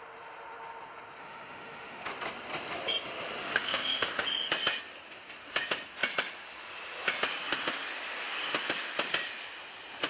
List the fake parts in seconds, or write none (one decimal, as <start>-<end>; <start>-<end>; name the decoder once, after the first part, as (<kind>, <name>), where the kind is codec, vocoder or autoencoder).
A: 1.2-2.1 (autoencoder, DAC-VAE); 3.4-4.1